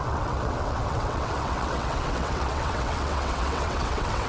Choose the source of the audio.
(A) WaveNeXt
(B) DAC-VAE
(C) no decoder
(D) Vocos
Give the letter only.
A